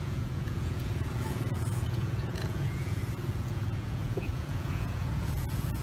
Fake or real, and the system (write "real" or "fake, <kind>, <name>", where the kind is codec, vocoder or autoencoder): fake, vocoder, Vocos